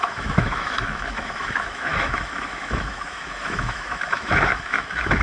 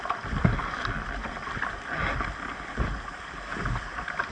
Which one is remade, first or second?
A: first